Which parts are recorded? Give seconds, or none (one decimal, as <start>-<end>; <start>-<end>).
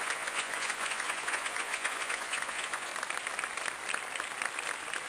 2.9-5.1